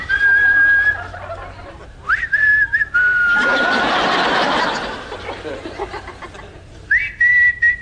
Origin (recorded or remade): recorded